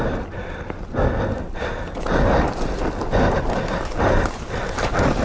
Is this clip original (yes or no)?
yes